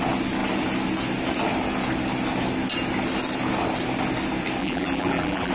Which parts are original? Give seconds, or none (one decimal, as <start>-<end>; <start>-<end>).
0.0-4.6